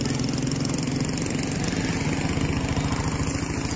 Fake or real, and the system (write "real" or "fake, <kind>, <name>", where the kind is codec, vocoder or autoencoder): real